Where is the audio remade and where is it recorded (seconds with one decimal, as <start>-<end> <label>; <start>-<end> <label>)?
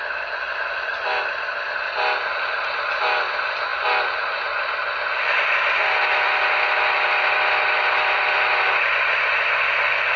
0.0-10.2 recorded